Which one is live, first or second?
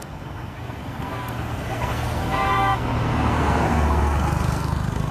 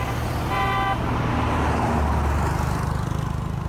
second